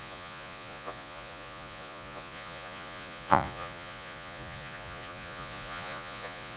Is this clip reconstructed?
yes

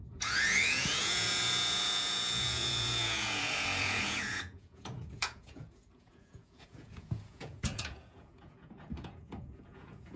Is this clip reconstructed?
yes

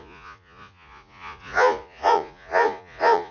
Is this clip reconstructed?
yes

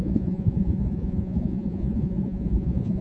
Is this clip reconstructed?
yes